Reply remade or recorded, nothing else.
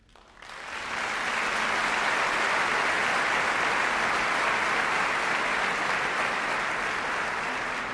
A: recorded